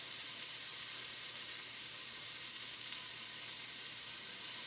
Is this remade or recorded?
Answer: remade